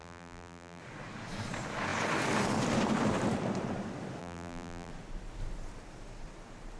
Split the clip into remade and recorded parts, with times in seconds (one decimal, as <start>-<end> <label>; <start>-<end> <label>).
0.0-0.8 remade; 0.8-4.2 recorded; 4.2-4.9 remade; 4.9-6.8 recorded